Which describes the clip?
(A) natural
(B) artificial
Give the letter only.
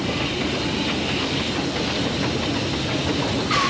A